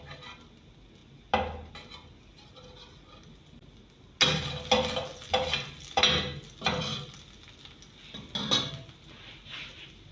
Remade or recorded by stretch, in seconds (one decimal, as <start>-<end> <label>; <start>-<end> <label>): 0.0-10.1 recorded